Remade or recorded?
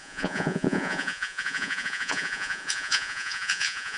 remade